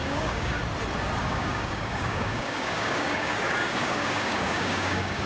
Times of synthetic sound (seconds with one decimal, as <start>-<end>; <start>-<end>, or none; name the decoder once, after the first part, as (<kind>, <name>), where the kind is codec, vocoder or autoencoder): 0.0-0.6 (codec, DAC); 1.2-5.3